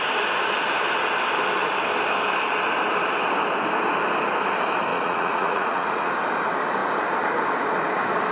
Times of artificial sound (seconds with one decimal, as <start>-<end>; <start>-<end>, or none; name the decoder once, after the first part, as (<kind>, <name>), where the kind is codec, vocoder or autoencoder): 4.9-6.1 (vocoder, Vocos)